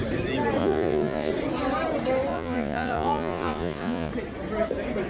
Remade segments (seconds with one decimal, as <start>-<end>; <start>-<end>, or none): 0.6-1.3; 2.3-4.1